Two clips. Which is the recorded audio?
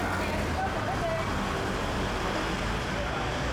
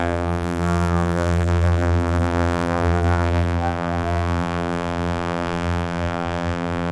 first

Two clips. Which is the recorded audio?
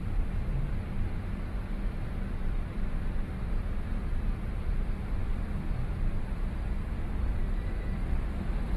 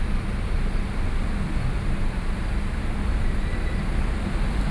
second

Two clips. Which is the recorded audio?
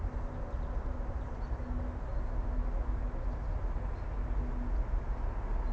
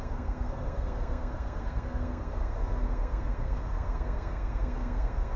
first